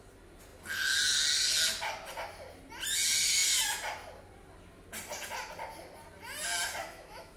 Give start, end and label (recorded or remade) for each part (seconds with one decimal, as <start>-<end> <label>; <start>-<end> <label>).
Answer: 0.0-6.8 recorded; 6.8-7.4 remade